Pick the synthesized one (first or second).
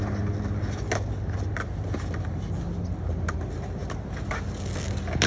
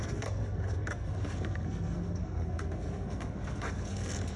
second